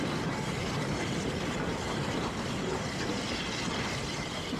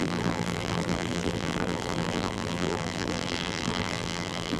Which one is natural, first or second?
first